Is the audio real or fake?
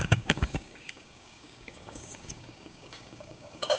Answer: fake